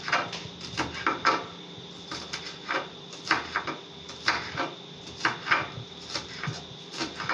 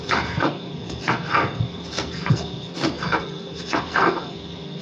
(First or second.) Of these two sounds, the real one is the first